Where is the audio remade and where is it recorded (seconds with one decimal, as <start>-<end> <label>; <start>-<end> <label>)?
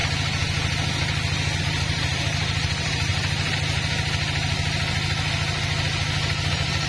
0.0-1.6 recorded; 1.6-3.1 remade; 3.1-6.5 recorded; 6.5-6.9 remade